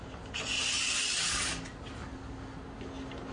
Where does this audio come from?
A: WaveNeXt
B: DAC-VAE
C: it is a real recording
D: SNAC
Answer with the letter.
C